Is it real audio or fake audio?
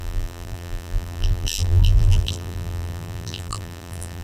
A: fake